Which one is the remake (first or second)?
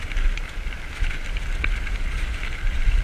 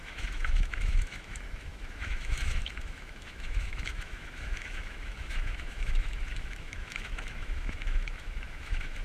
second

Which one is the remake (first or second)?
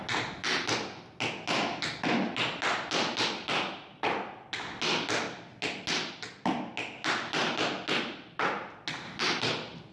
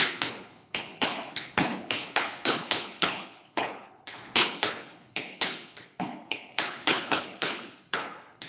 second